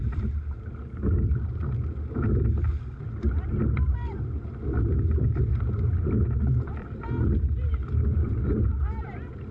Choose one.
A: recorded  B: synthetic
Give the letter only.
A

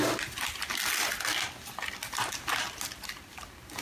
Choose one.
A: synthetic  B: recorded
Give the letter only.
B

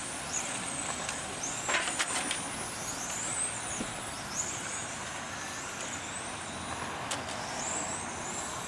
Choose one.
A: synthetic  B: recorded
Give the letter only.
B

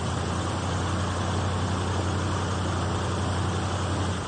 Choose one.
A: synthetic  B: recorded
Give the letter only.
B